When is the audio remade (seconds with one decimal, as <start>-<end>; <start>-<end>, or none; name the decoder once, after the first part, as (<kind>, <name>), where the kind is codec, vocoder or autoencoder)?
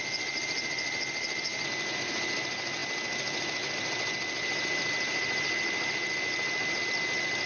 none